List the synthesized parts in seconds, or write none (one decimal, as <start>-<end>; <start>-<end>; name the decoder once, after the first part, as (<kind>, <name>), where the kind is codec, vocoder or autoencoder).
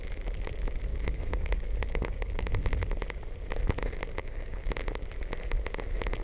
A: 0.9-2.5 (codec, DAC); 4.2-4.7